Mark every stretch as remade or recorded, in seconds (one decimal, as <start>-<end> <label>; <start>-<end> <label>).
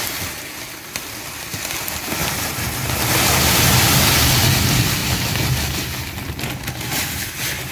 0.0-7.7 recorded